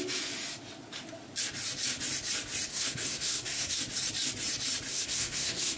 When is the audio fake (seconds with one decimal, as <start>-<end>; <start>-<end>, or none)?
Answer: 2.7-3.8; 4.9-5.8